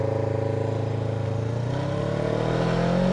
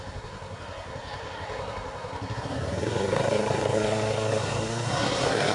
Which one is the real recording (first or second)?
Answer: first